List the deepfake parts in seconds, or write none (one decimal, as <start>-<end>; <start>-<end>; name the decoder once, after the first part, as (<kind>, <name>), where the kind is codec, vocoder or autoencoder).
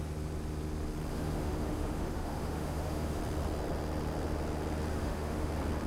1.1-3.2 (autoencoder, DAC-VAE); 4.9-5.5